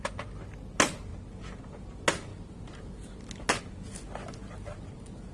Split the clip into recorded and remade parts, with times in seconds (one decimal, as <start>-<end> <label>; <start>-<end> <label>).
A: 0.0-5.3 recorded